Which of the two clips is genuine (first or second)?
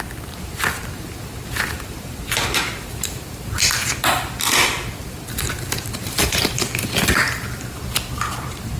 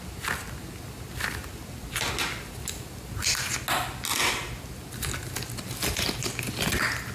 second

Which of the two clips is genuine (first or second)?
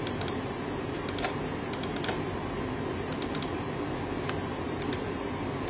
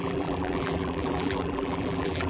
first